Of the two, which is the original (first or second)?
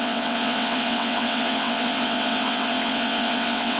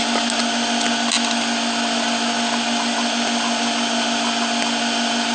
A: second